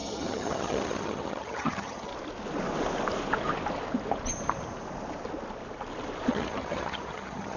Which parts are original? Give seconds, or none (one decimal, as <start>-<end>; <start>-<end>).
2.1-6.3